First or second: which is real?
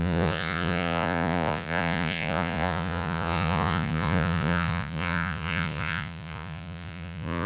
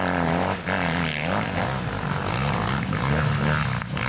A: second